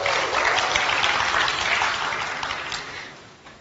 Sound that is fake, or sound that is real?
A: real